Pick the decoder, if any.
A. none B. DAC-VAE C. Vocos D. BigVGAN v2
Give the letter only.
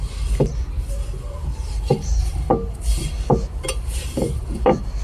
A